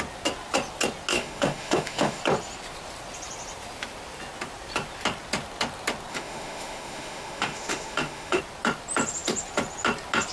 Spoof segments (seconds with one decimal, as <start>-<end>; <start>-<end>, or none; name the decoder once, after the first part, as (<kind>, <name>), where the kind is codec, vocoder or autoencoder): 1.1-2.2 (autoencoder, DAC-VAE); 6.1-8.4